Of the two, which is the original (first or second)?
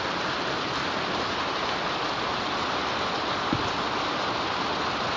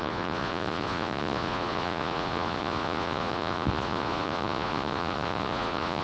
first